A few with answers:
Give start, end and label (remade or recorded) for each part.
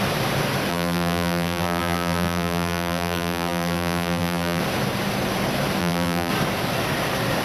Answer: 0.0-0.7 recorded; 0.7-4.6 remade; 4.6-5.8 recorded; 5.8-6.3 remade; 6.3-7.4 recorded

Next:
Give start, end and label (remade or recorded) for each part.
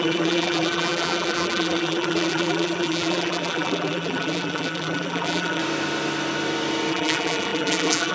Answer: 0.0-5.6 remade; 5.6-6.9 recorded; 6.9-8.1 remade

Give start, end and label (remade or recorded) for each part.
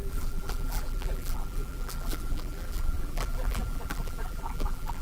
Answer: 0.0-5.0 remade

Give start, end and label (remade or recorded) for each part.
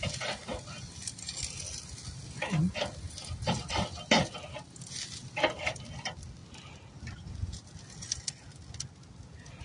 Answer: 0.0-9.6 recorded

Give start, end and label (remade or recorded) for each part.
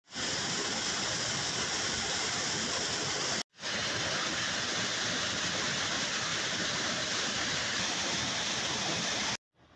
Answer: 0.0-9.8 recorded